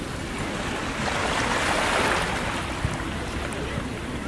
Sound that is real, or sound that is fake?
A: real